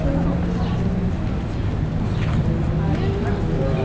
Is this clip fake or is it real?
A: real